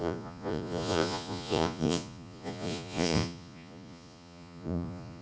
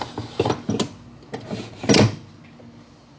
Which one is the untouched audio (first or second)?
second